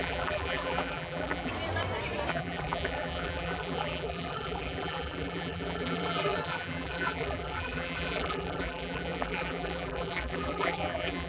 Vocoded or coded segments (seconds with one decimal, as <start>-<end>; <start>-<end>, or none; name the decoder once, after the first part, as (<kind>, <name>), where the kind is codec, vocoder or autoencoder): 0.0-1.5 (vocoder, BigVGAN v2); 2.3-11.3